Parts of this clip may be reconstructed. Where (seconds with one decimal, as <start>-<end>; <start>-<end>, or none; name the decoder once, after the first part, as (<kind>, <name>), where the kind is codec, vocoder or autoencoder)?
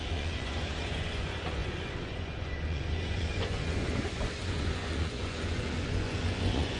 0.0-6.8 (vocoder, Vocos)